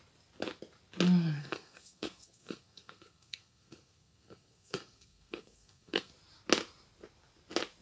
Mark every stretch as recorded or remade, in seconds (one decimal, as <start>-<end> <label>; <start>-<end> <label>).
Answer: 0.0-1.4 recorded; 1.4-6.1 remade; 6.1-7.8 recorded